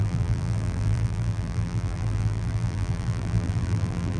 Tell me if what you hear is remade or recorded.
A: remade